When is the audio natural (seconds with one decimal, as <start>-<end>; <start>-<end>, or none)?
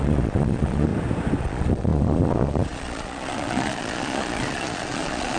0.9-1.4